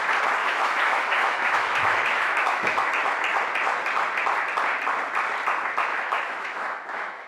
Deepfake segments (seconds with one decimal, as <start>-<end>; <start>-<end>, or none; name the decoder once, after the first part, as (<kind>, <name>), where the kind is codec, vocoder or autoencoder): 0.4-2.9 (autoencoder, DAC-VAE); 5.9-7.3